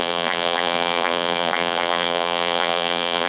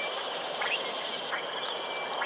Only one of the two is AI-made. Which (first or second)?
first